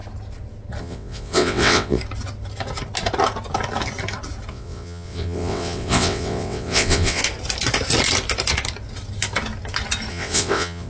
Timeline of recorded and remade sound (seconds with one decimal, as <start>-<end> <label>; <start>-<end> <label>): 0.0-0.8 recorded; 0.8-2.0 remade; 2.0-4.5 recorded; 4.5-7.2 remade; 7.2-10.1 recorded; 10.1-10.9 remade

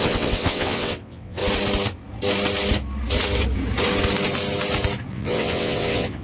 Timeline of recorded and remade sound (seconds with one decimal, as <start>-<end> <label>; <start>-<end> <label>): 0.0-1.4 remade; 1.4-5.1 recorded; 5.1-6.2 remade

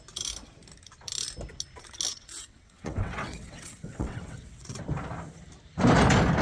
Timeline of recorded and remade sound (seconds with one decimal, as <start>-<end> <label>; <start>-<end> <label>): 0.0-2.1 recorded; 2.1-4.8 remade; 4.8-6.4 recorded

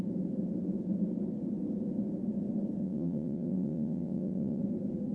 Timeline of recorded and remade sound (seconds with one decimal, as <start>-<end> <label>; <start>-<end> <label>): 0.0-2.8 recorded; 2.8-4.6 remade; 4.6-5.1 recorded

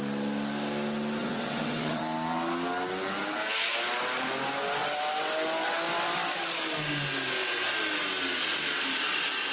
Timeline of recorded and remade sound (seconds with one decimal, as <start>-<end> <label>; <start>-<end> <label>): 0.0-1.2 recorded; 1.2-2.0 remade; 2.0-9.5 recorded

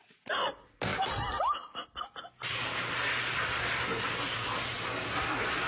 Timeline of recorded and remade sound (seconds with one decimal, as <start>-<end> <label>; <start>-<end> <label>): 0.0-5.7 recorded

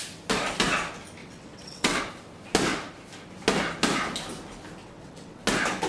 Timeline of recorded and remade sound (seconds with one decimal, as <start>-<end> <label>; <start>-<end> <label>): 0.0-1.2 recorded; 1.2-2.0 remade; 2.0-4.8 recorded; 4.8-5.4 remade; 5.4-5.9 recorded

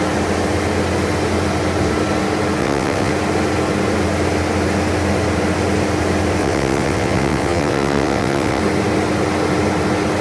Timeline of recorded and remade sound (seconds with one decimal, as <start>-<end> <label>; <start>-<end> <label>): 0.0-2.6 recorded; 2.6-3.1 remade; 3.1-6.4 recorded; 6.4-8.6 remade; 8.6-10.2 recorded